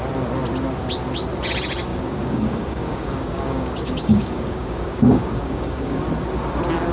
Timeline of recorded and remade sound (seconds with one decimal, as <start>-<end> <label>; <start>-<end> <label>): 0.0-1.9 recorded; 1.9-6.0 remade; 6.0-6.9 recorded